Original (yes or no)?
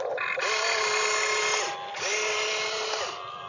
yes